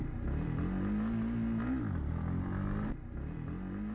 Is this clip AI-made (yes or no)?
no